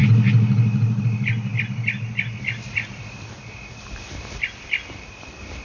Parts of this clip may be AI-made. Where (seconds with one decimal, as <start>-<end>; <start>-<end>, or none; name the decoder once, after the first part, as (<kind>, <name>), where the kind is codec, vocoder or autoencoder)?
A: 1.0-5.6 (vocoder, BigVGAN v2)